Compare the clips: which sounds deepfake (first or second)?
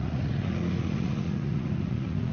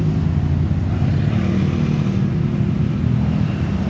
first